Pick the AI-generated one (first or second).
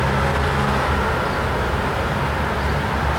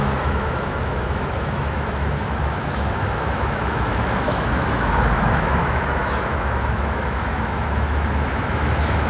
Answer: second